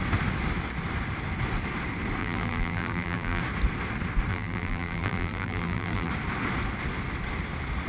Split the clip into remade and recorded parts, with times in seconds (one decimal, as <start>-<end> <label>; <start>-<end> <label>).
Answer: 0.0-2.2 recorded; 2.2-3.4 remade; 3.4-4.3 recorded; 4.3-6.1 remade; 6.1-7.9 recorded